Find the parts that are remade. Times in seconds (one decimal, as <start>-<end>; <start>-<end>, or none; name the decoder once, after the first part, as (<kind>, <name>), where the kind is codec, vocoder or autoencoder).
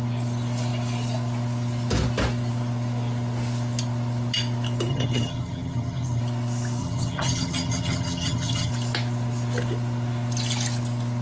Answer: 4.9-6.2 (vocoder, HiFi-GAN); 6.8-8.7